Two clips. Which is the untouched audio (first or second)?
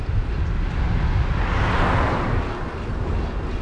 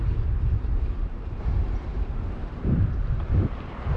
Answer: first